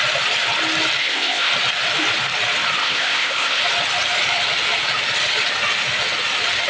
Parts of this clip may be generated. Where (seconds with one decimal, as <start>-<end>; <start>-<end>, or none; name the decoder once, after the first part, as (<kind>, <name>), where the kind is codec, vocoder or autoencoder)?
1.0-1.5 (codec, ZipCodec); 2.8-3.6